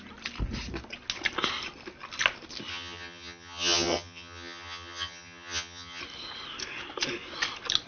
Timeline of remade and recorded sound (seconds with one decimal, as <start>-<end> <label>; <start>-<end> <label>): 0.0-2.7 recorded; 2.7-6.0 remade; 6.0-7.9 recorded